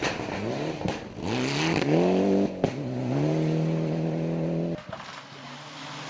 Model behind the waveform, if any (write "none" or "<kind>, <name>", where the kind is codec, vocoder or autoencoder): none